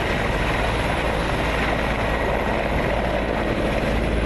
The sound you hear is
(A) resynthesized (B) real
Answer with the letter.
B